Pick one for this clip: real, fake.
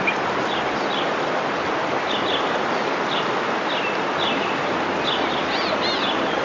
real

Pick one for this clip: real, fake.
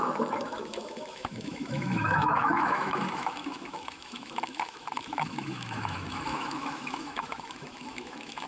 fake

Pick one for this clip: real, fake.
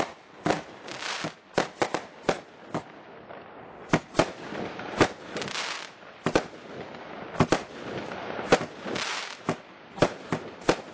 real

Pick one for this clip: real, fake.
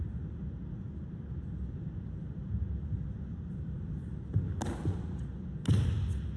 real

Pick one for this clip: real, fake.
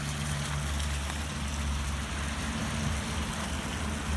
real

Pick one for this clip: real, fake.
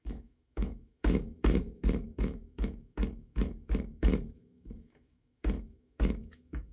fake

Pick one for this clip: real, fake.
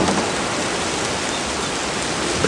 real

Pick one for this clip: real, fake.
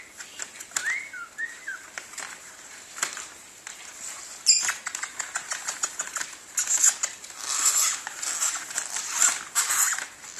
real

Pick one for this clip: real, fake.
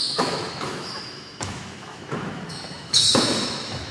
fake